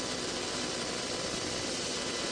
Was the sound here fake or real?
real